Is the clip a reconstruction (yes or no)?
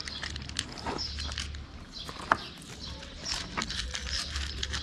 no